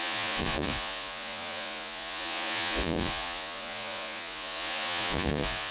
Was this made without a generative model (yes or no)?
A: no